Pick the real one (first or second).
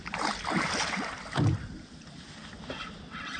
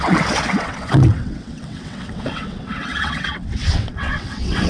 first